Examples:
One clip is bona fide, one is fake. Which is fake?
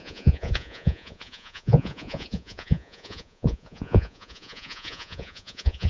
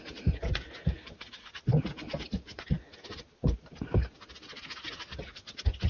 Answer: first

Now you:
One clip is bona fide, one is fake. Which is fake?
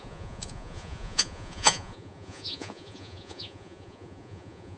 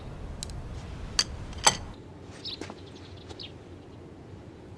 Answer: first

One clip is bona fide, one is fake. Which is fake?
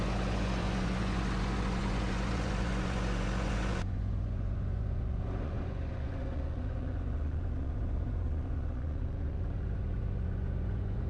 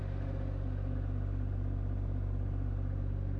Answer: first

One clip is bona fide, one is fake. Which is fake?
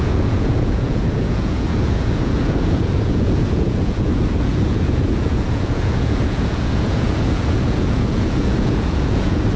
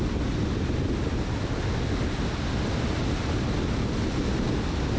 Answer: first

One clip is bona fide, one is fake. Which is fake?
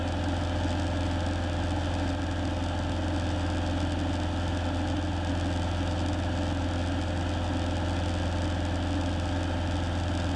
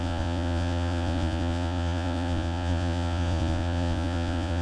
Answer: second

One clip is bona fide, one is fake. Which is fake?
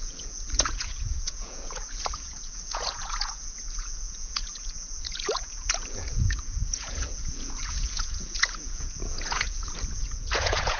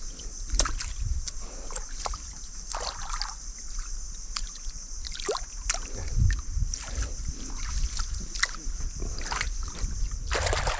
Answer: first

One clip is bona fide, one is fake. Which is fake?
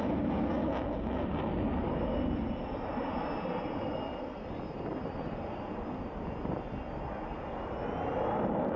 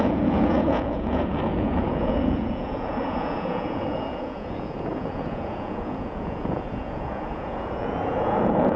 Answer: second